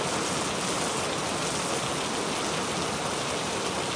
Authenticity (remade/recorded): recorded